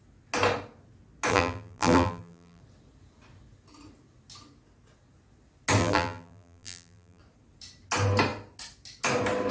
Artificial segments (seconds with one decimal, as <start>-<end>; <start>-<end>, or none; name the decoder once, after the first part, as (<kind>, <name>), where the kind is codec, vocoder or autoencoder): 1.3-2.6 (vocoder, BigVGAN v2); 5.8-7.2